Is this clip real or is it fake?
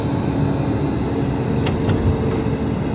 real